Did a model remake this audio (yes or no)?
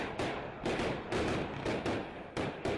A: no